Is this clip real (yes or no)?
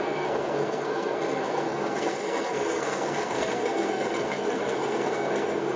no